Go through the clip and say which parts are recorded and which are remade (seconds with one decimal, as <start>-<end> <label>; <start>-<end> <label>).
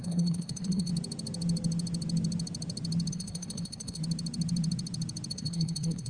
0.0-0.9 remade; 0.9-3.1 recorded; 3.1-4.0 remade; 4.0-5.3 recorded; 5.3-6.1 remade